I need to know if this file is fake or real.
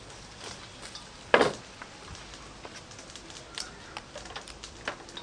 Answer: real